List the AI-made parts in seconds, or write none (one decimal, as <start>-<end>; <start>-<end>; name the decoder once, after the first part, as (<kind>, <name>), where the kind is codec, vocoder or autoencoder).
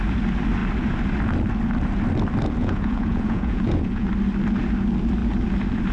2.6-4.1 (vocoder, Vocos)